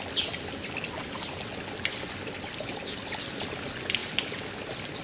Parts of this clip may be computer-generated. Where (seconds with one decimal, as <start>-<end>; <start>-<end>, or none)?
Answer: none